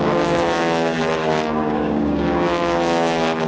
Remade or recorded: remade